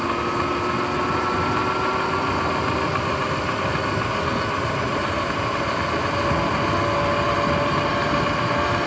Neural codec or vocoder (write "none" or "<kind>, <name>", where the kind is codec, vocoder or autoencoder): none